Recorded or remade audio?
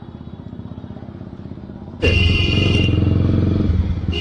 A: recorded